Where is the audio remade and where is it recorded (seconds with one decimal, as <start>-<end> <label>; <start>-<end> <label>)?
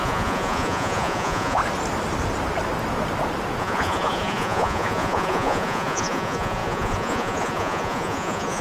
0.0-1.6 remade; 1.6-3.6 recorded; 3.6-8.6 remade